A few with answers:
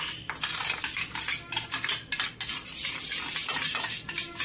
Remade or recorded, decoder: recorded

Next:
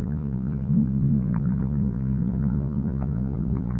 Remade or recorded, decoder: remade, vocoder, Vocos